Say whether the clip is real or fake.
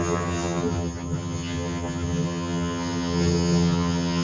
fake